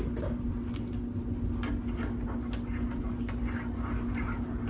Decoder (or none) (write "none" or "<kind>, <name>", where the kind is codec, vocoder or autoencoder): none